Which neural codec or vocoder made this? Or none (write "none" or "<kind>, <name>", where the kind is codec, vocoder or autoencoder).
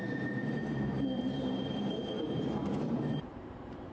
vocoder, BigVGAN v2